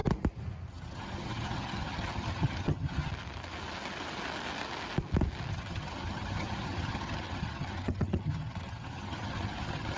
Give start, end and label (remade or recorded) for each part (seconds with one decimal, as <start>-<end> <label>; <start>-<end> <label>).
0.0-0.7 recorded; 0.7-3.1 remade; 3.1-5.5 recorded; 5.5-10.0 remade